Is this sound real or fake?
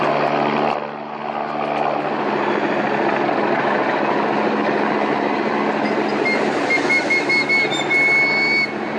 real